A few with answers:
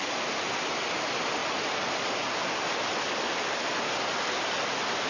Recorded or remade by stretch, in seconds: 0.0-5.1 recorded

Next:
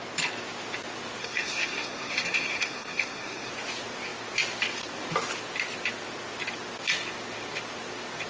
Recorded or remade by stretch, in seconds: 0.0-1.2 recorded; 1.2-3.5 remade; 3.5-8.3 recorded